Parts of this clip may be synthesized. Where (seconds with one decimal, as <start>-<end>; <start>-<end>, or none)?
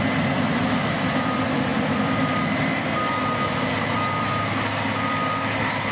none